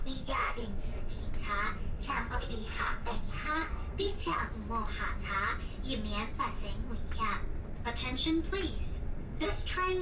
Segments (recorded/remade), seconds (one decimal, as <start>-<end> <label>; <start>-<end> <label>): 0.0-1.2 remade; 1.2-1.8 recorded; 1.8-4.4 remade; 4.4-9.2 recorded; 9.2-10.0 remade